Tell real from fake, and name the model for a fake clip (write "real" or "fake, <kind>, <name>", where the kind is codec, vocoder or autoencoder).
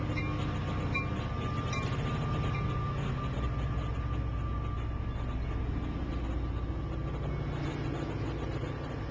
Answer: real